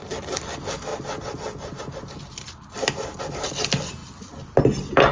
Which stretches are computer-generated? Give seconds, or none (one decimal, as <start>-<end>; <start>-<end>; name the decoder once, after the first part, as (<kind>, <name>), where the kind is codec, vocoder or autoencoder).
none